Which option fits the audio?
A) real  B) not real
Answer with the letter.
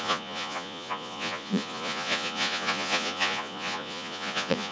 B